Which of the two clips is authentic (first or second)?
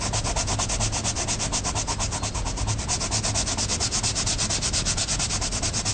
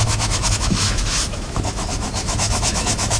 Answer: first